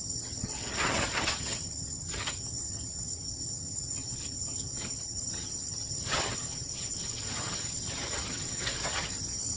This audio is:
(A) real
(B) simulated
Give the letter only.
B